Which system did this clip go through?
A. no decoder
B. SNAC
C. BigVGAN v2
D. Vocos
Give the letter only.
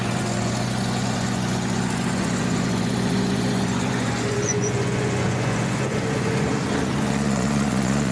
D